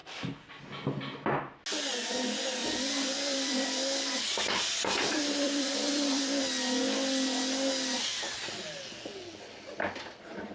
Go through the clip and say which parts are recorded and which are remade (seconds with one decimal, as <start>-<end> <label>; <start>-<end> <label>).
0.0-2.6 recorded; 2.6-6.4 remade; 6.4-10.5 recorded